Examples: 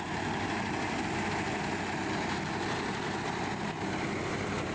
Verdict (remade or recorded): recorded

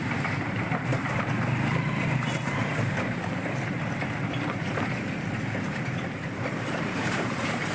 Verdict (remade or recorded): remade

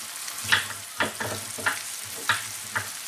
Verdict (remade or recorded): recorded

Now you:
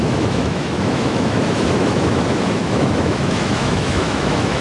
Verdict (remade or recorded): remade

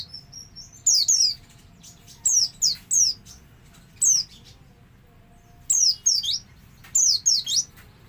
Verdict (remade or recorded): recorded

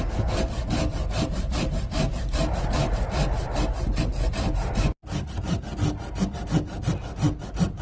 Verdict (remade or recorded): recorded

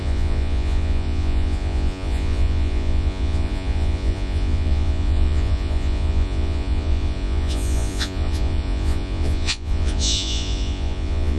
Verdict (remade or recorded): remade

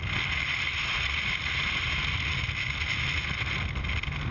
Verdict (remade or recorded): recorded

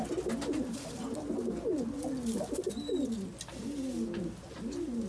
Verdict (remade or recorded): recorded